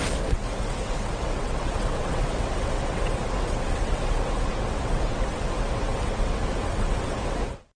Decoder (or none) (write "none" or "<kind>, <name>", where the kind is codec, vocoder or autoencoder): vocoder, WaveNeXt